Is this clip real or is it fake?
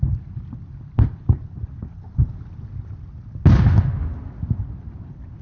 real